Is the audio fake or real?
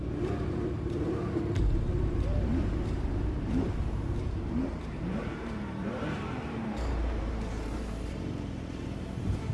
fake